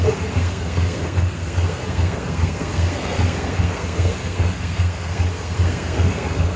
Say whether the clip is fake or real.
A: fake